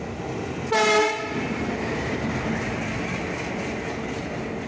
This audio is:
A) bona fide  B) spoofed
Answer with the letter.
A